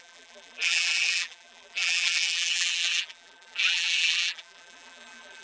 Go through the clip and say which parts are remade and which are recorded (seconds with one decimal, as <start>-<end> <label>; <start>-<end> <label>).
0.0-5.4 remade